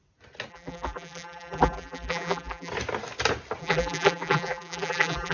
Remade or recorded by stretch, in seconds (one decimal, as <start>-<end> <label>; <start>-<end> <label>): 0.0-0.5 recorded; 0.5-2.7 remade; 2.7-3.6 recorded; 3.6-5.3 remade